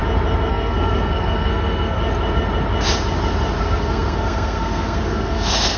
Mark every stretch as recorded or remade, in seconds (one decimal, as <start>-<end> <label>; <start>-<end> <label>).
0.0-0.5 recorded; 0.5-2.0 remade; 2.0-3.6 recorded; 3.6-5.8 remade